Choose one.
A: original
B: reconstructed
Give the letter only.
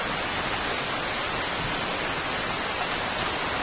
A